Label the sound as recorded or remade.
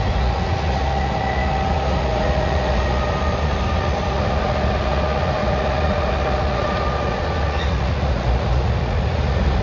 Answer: remade